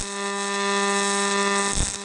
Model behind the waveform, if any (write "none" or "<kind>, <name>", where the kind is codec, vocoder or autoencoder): none